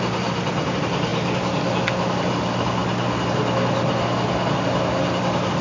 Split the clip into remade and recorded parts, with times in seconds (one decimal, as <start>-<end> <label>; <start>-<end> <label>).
0.0-5.6 recorded